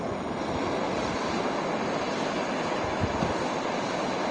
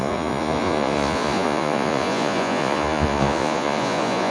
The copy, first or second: second